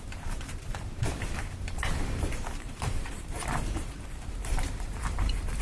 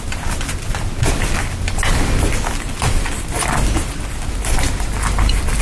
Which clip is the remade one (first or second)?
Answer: first